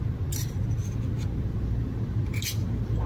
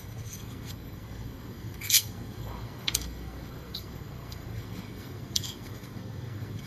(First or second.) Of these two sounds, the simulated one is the second